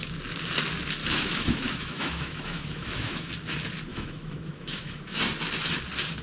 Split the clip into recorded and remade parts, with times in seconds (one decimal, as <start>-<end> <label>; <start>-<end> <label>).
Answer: 0.0-1.0 recorded; 1.0-3.3 remade; 3.3-3.9 recorded; 3.9-5.2 remade; 5.2-6.2 recorded